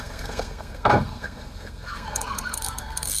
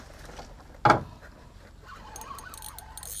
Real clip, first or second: second